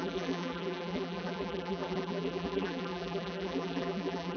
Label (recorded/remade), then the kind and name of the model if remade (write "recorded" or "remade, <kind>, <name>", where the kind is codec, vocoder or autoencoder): remade, vocoder, BigVGAN v2